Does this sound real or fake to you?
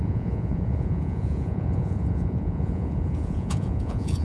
fake